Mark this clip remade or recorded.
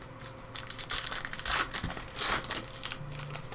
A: recorded